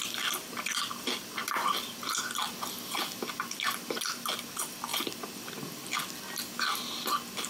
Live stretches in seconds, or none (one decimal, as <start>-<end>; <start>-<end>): 0.0-7.5